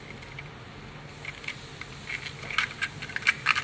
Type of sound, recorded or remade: recorded